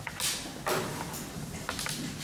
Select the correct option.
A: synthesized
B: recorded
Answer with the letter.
B